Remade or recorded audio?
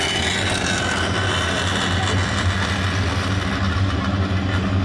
recorded